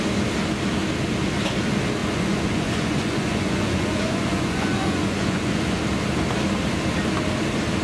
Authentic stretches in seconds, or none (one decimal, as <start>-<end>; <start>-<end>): 0.0-2.0; 5.8-7.8